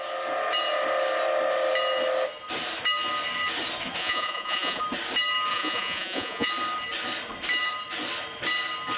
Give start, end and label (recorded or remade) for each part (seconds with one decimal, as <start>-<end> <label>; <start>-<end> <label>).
0.0-4.0 recorded; 4.0-4.8 remade; 4.8-5.5 recorded; 5.5-6.5 remade; 6.5-9.0 recorded